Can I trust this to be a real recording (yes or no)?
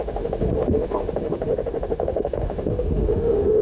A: no